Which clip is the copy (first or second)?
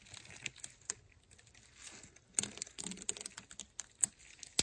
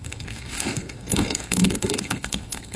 second